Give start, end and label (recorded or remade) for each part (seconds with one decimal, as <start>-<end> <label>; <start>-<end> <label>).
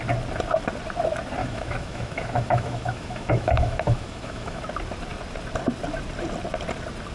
0.0-1.4 recorded; 1.4-4.6 remade; 4.6-7.1 recorded